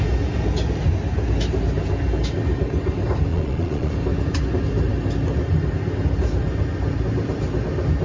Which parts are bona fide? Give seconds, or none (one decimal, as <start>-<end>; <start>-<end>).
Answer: 0.0-3.3; 3.9-8.0